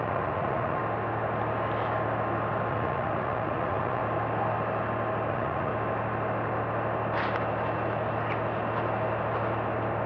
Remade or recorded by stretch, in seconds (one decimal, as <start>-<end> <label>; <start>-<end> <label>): 0.0-0.8 remade; 0.8-2.7 recorded; 2.7-4.0 remade; 4.0-5.3 recorded; 5.3-5.7 remade; 5.7-10.1 recorded